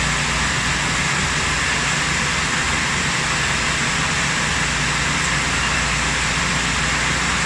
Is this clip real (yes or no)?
yes